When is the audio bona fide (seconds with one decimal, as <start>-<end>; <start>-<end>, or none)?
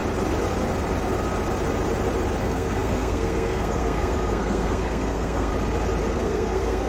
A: 0.0-2.4; 5.5-6.1